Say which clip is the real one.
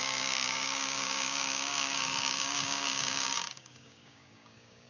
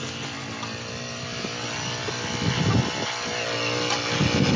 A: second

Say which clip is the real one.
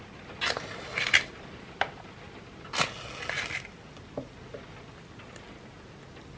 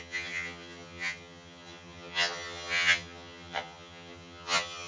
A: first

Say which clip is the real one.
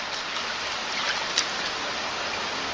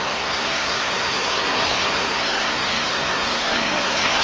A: first